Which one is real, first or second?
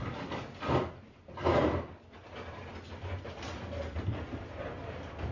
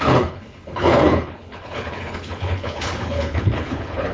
first